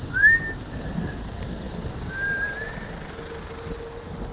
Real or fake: real